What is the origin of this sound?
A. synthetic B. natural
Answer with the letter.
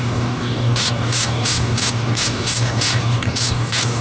A